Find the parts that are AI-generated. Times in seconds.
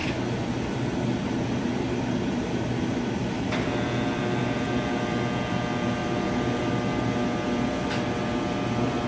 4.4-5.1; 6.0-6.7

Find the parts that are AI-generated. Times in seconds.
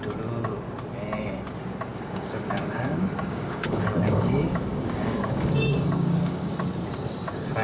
1.9-6.5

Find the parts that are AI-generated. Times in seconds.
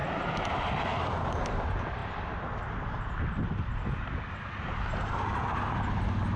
none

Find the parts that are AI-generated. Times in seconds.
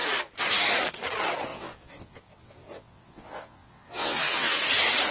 1.5-4.6